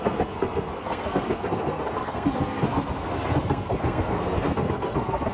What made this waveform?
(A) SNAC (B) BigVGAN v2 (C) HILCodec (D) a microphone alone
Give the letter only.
A